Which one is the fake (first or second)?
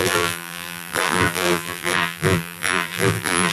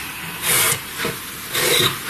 first